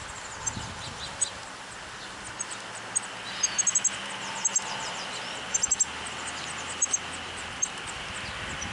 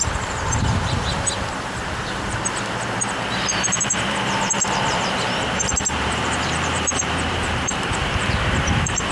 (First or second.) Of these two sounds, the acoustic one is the first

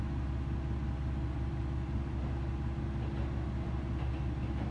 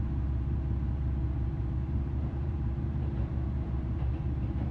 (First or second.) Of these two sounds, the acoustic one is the first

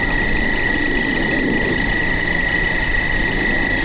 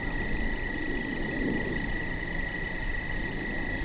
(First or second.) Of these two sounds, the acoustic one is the first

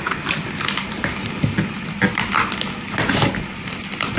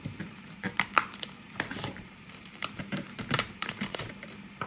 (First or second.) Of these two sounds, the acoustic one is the first